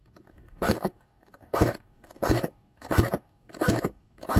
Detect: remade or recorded remade